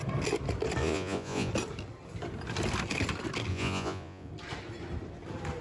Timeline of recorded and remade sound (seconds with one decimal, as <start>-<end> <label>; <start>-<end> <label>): 0.0-0.8 recorded; 0.8-1.5 remade; 1.5-3.5 recorded; 3.5-4.3 remade; 4.3-5.6 recorded